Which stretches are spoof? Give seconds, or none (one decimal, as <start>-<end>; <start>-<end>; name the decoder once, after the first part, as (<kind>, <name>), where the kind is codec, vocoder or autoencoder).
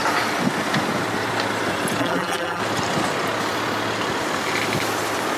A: 2.0-2.6 (vocoder, BigVGAN v2)